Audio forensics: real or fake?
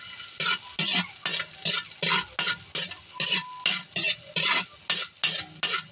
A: real